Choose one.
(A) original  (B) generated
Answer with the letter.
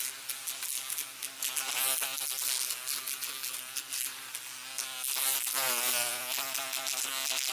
A